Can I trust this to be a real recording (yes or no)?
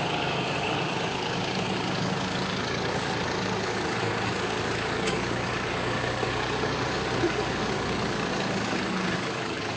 no